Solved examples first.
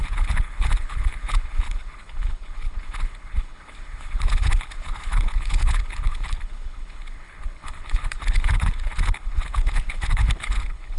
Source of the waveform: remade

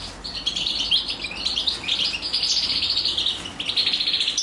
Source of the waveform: recorded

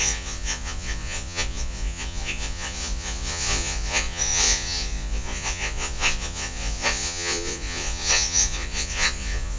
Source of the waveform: remade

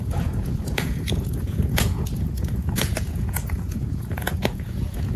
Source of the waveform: remade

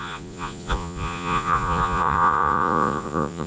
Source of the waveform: remade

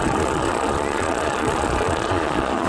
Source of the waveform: remade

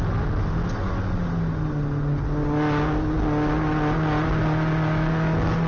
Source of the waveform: recorded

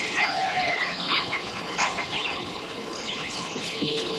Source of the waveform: remade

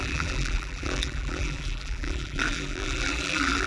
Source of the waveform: remade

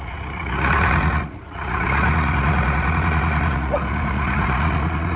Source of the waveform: remade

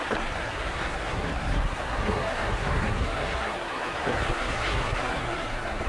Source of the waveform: remade